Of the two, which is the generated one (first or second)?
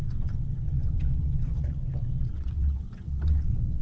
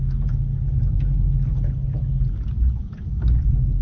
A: first